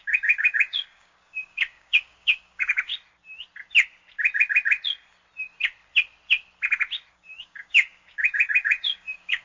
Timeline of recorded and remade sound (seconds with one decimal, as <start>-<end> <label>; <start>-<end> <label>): 0.0-2.9 remade; 2.9-7.1 recorded; 7.1-9.4 remade